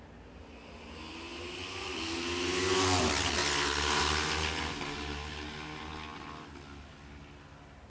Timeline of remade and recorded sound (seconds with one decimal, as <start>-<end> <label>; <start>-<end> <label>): 0.0-7.9 recorded